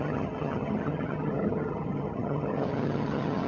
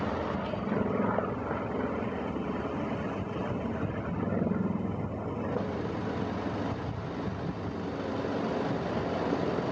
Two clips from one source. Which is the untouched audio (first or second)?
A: second